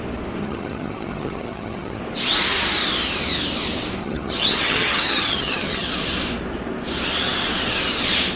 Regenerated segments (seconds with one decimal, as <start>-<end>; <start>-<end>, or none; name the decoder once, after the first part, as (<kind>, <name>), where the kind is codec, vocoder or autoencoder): 0.4-2.0 (vocoder, HiFi-GAN); 4.0-5.9